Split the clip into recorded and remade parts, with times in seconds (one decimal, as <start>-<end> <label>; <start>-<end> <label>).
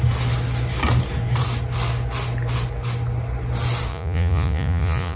0.0-3.9 recorded; 3.9-5.2 remade